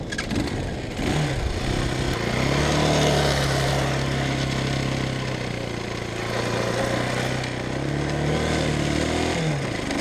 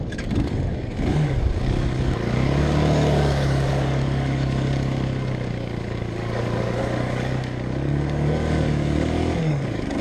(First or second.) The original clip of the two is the first